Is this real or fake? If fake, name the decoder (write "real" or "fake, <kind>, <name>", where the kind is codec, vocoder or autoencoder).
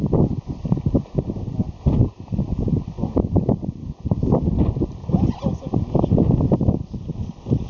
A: real